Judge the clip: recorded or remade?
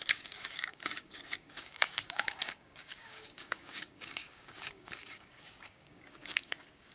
remade